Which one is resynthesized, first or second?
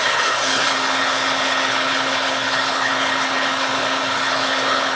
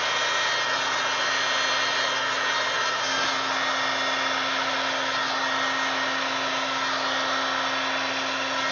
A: first